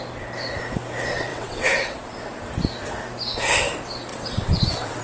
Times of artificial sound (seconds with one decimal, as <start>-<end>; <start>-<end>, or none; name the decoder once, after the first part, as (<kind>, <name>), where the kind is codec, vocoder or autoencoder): 1.3-2.0 (vocoder, WaveNeXt); 4.1-5.0